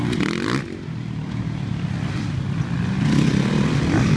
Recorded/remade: recorded